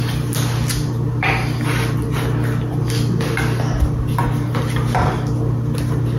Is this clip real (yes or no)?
yes